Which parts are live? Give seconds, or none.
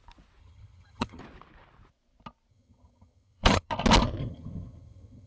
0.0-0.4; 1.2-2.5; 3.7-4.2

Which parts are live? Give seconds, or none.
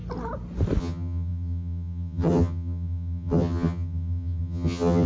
0.0-0.8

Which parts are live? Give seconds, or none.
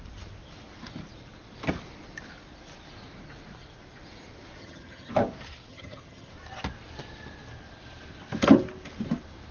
0.0-4.6; 5.1-5.7; 6.3-9.5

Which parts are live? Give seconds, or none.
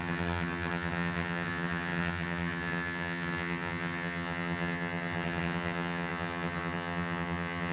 none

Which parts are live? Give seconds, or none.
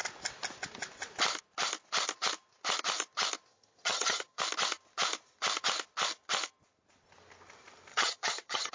0.0-3.5; 4.4-7.9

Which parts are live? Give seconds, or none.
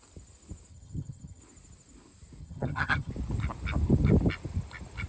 0.0-0.7; 1.4-2.4; 3.1-5.1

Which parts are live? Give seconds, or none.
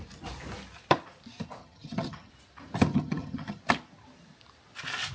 0.0-1.6; 2.3-2.9; 3.6-5.1